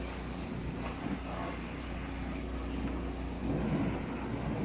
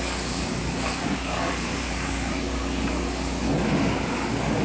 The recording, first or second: first